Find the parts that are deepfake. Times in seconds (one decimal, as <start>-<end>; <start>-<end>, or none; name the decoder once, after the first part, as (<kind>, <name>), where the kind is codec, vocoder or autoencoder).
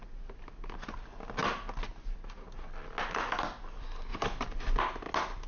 none